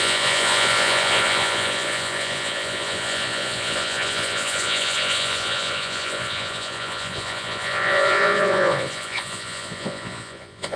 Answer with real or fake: fake